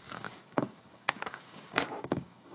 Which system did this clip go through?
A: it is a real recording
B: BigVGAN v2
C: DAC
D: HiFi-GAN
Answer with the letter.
C